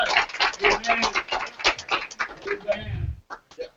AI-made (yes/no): no